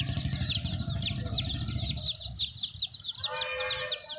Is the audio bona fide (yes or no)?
yes